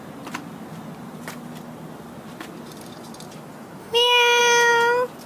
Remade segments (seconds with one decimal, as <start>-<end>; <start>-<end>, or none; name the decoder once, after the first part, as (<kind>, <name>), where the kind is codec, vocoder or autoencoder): 3.8-4.4 (autoencoder, DAC-VAE)